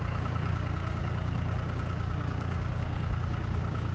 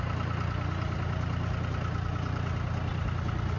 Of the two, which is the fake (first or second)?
first